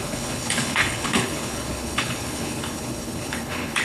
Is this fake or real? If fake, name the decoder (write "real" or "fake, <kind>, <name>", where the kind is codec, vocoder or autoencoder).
fake, codec, HILCodec